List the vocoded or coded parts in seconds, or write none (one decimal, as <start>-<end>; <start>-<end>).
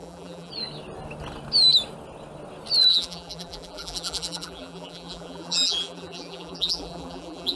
0.0-0.5; 2.9-7.6